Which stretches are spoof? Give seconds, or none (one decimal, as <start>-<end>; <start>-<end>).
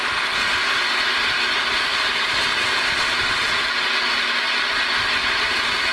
none